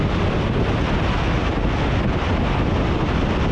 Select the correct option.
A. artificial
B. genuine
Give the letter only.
B